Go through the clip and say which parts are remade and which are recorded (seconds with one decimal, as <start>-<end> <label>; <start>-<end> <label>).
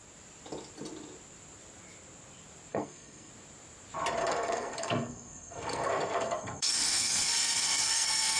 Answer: 0.0-2.7 recorded; 2.7-3.3 remade; 3.3-4.2 recorded; 4.2-8.4 remade